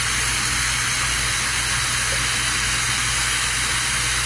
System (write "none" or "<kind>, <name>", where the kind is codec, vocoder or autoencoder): none